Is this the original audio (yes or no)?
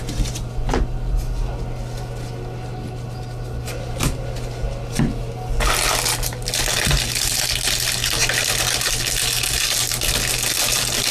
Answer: yes